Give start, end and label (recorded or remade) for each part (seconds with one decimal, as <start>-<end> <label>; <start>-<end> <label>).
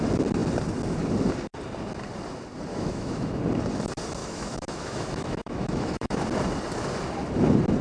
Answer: 0.0-2.7 recorded; 2.7-3.4 remade; 3.4-4.2 recorded; 4.2-6.2 remade; 6.2-7.8 recorded